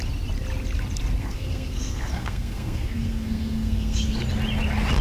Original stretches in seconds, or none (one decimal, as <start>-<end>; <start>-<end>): 0.0-1.2; 4.2-5.0